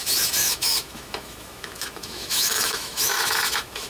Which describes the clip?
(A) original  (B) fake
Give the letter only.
B